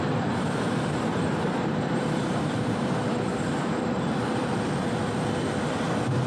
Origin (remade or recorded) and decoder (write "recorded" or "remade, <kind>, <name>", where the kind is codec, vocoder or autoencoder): remade, vocoder, BigVGAN v2